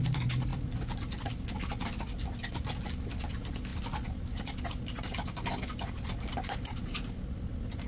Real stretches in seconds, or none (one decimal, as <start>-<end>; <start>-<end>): 0.0-7.9